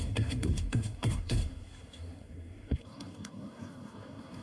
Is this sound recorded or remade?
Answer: remade